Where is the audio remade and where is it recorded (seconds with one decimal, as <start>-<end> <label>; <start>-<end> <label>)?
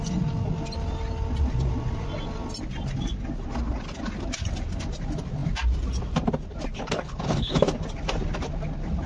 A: 0.0-6.7 recorded; 6.7-7.6 remade; 7.6-9.1 recorded